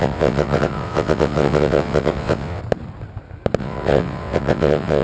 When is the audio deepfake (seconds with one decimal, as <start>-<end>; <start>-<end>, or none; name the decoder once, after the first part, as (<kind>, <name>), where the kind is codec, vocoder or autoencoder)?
0.0-2.6 (vocoder, WaveNeXt); 3.6-5.0